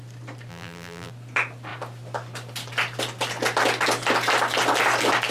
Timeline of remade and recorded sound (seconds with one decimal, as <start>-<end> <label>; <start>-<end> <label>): 0.0-0.5 recorded; 0.5-1.1 remade; 1.1-5.3 recorded